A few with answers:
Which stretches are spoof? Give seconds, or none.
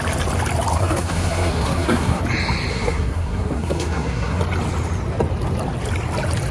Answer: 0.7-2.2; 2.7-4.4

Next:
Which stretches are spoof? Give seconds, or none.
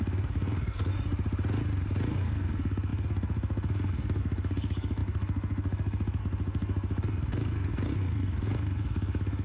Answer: 0.0-0.9; 2.1-9.4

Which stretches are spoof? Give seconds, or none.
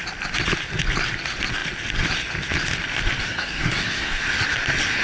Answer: 3.2-4.2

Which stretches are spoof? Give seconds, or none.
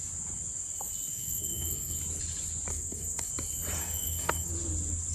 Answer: 1.1-2.0; 2.7-3.3; 3.8-4.5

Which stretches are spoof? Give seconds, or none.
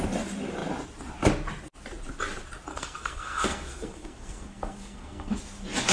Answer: 2.7-5.4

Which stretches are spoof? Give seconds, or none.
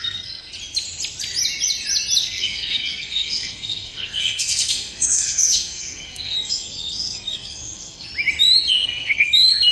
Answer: 0.0-0.5; 2.2-8.1; 8.7-9.7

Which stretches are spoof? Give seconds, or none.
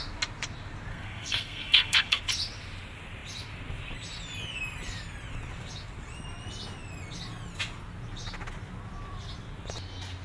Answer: 0.9-2.2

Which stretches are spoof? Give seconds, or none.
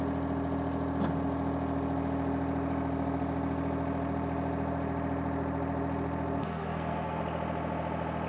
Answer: 6.4-7.2